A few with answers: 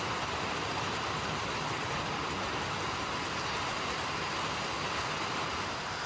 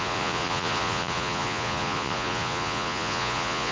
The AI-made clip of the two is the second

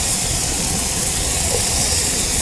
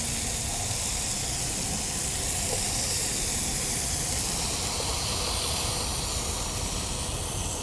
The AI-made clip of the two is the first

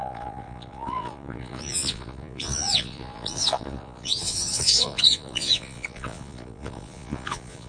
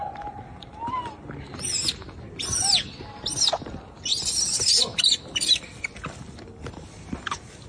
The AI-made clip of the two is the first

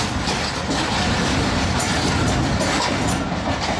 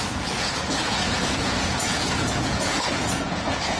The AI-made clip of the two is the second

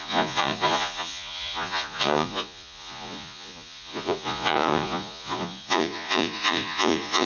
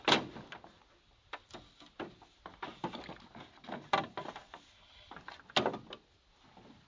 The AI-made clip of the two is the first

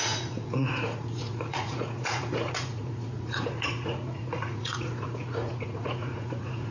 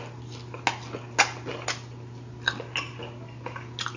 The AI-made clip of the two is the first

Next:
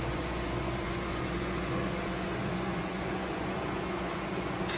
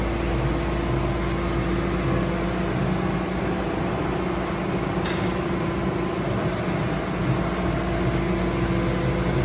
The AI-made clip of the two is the first